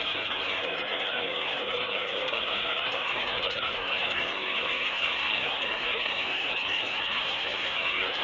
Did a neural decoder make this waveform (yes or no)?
yes